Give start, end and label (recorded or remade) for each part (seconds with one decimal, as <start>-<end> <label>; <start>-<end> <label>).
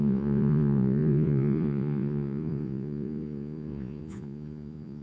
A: 0.0-5.0 remade